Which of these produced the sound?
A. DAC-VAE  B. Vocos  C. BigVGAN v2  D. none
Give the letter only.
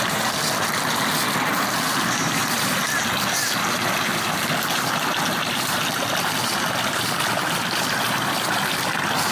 D